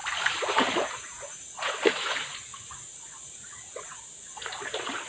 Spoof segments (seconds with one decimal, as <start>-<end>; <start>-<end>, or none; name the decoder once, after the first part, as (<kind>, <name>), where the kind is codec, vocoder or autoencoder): 0.5-5.1 (vocoder, Vocos)